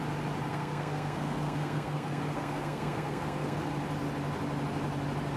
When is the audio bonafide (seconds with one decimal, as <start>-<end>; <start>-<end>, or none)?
0.0-0.5; 3.7-5.4